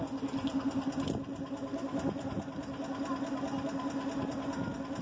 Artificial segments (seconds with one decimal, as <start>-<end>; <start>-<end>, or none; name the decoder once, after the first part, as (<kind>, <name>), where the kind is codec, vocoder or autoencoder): none